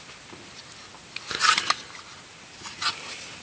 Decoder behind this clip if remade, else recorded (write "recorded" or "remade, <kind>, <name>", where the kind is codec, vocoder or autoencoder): recorded